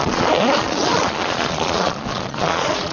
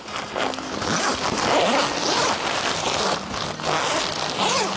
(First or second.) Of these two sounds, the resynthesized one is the first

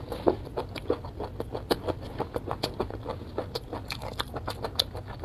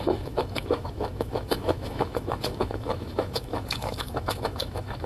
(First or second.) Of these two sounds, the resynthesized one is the second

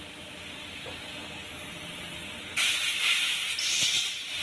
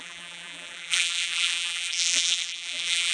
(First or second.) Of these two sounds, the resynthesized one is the second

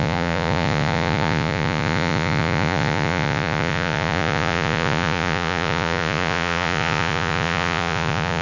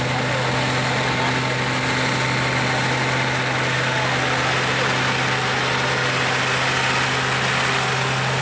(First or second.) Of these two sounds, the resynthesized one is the first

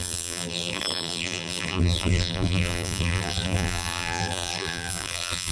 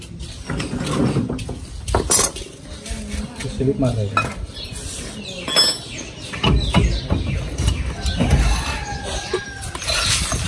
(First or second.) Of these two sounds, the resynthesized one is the first